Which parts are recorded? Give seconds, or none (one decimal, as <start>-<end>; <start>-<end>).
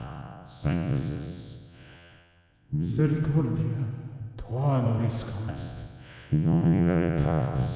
2.9-5.5